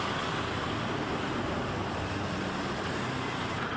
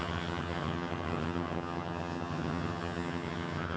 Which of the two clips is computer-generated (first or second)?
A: second